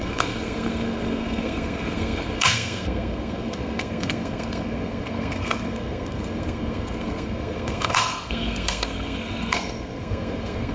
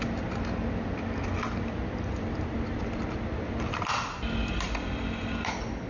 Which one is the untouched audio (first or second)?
second